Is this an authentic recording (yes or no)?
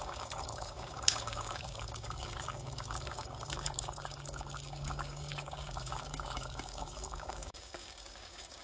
no